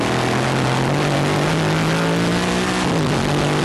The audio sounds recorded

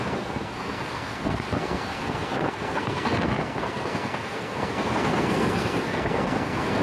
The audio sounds remade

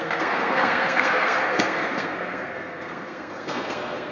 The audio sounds remade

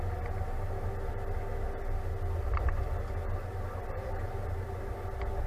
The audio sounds recorded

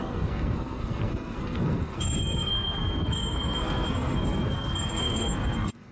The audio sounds remade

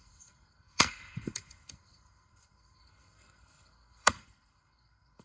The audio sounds remade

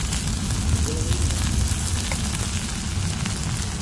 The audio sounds recorded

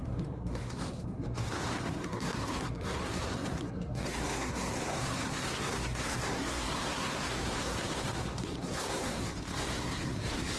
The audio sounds remade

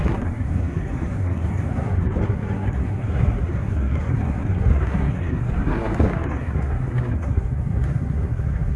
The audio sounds remade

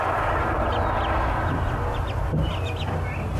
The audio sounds recorded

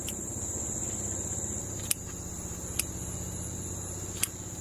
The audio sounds recorded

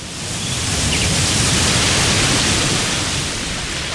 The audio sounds recorded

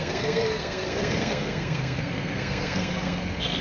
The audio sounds remade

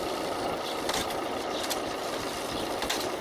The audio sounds recorded